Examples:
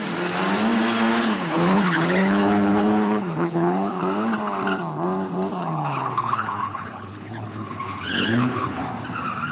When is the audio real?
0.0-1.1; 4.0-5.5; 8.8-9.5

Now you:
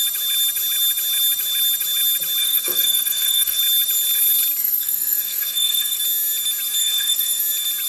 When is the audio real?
0.0-2.4; 3.6-4.6; 6.0-6.8; 7.4-7.9

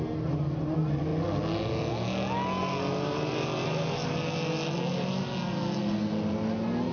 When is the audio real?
0.0-6.9